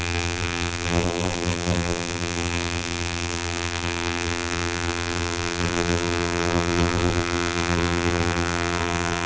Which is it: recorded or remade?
remade